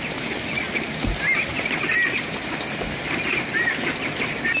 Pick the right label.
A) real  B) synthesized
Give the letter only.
A